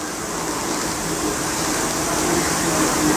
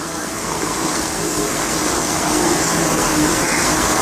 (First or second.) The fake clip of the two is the second